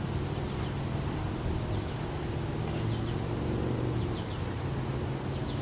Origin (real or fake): real